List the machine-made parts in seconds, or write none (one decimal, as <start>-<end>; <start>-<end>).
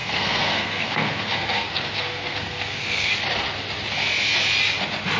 0.0-3.1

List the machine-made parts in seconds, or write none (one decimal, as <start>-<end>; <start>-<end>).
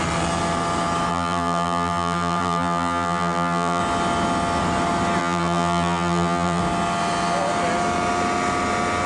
1.1-3.8; 5.2-6.6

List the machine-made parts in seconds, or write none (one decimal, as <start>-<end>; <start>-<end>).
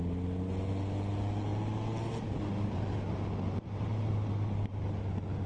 none